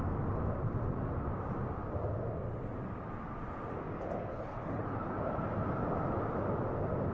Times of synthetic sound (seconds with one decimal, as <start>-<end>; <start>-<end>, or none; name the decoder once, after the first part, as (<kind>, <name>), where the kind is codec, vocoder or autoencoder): 4.3-5.1 (codec, HILCodec)